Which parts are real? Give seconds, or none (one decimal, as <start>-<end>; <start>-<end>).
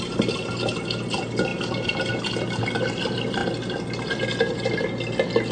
0.0-5.5